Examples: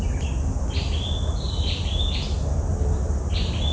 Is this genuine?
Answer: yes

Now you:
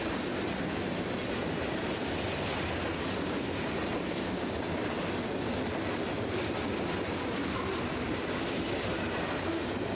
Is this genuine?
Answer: yes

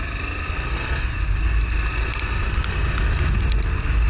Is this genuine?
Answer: yes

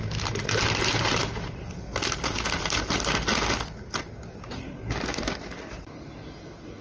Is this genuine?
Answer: yes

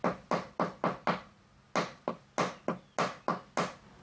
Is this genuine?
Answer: yes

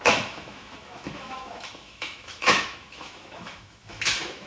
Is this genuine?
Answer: no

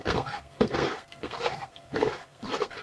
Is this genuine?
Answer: no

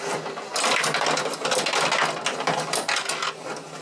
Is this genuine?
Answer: yes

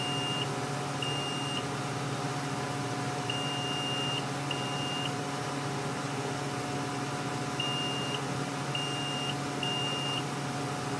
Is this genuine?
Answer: yes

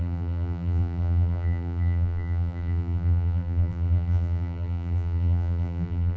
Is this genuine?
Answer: no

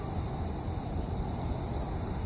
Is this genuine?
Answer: yes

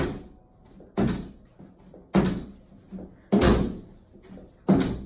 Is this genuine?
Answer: yes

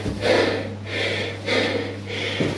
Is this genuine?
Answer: yes